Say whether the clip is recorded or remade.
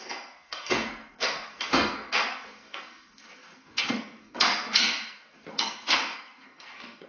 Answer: remade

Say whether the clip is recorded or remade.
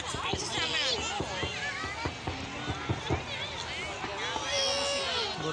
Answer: recorded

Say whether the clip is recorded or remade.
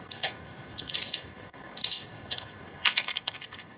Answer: remade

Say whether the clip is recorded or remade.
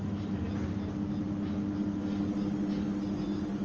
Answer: recorded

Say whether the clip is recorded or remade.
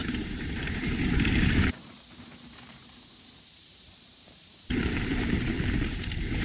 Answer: remade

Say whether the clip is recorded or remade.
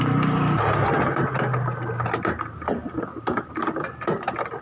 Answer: recorded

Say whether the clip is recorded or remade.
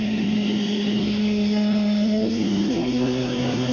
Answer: remade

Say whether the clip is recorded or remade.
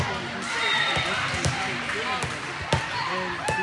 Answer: recorded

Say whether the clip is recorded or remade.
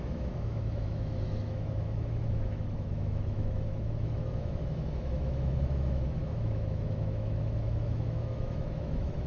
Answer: remade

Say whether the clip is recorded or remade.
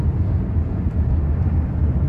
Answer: recorded